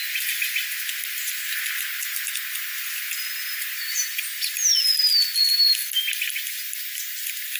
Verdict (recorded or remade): recorded